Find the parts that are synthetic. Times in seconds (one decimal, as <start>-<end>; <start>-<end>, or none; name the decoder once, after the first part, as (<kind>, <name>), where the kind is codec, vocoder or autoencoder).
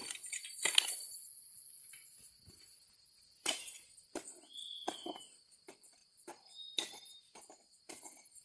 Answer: none